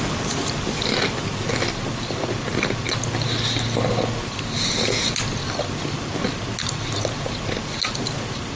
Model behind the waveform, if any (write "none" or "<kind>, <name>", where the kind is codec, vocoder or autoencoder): none